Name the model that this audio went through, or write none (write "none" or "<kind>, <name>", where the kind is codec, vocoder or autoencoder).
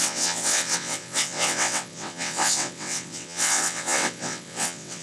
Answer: vocoder, WaveNeXt